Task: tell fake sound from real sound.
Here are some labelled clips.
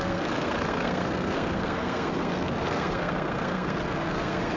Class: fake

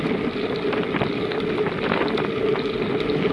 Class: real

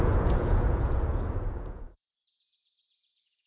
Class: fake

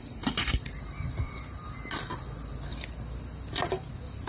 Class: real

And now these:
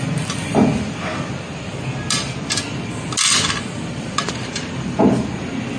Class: real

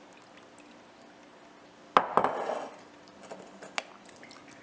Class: real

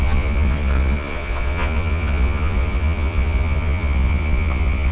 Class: fake